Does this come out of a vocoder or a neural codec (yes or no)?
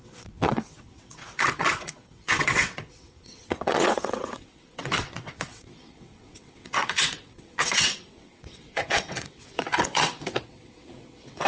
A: yes